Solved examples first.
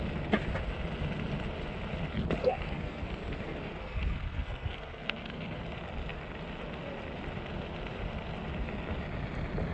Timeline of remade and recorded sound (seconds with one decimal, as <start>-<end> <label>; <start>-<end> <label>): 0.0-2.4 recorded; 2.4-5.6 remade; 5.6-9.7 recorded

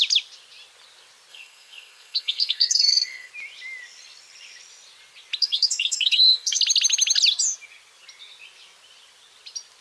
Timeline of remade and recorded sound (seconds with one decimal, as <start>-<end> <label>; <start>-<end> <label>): 0.0-1.3 recorded; 1.3-3.3 remade; 3.3-5.4 recorded; 5.4-6.6 remade; 6.6-9.8 recorded

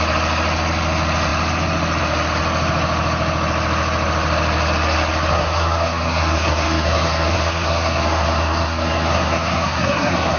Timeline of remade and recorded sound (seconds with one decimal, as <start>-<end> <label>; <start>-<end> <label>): 0.0-5.3 recorded; 5.3-10.4 remade